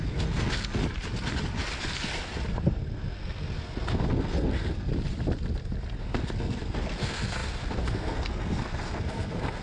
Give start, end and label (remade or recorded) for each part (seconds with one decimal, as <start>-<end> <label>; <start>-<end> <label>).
0.0-0.8 remade; 0.8-2.6 recorded; 2.6-4.9 remade; 4.9-6.0 recorded; 6.0-9.6 remade